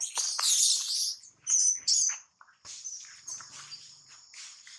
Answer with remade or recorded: remade